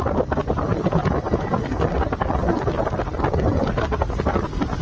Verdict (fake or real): real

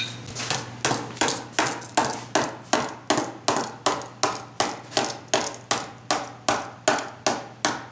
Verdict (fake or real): real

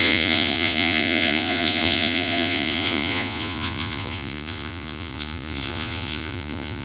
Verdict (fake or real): fake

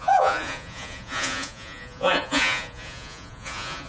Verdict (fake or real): fake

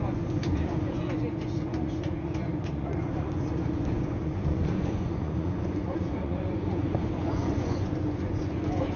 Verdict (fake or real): fake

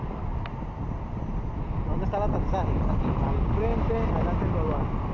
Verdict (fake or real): real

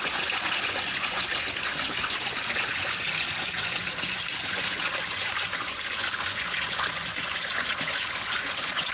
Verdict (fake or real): fake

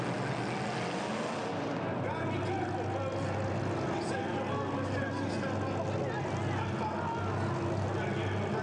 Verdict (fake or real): real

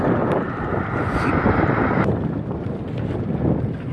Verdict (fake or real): real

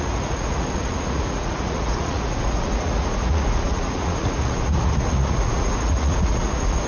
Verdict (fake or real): fake